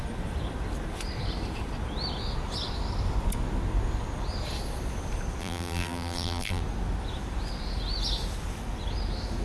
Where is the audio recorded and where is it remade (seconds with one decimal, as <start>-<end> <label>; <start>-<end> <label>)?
0.0-5.4 recorded; 5.4-6.6 remade; 6.6-9.4 recorded